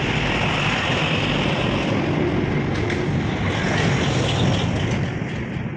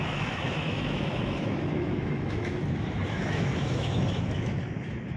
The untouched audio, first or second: first